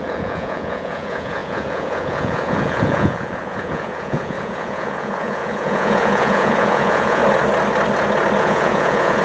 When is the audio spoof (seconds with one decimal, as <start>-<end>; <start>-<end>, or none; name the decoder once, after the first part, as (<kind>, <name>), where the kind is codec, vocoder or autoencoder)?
0.0-7.2 (vocoder, Vocos); 8.4-9.2